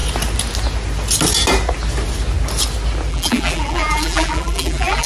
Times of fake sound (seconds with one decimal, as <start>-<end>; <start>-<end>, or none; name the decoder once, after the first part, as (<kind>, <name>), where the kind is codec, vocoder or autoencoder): 3.1-5.1 (vocoder, BigVGAN v2)